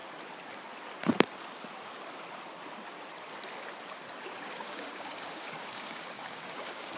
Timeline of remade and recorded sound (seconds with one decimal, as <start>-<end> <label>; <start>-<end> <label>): 0.0-4.2 recorded; 4.2-7.0 remade